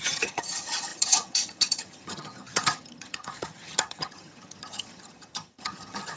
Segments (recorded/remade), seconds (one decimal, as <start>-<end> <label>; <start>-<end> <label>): 0.0-6.2 remade